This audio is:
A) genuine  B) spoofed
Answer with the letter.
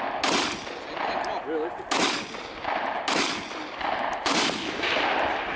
A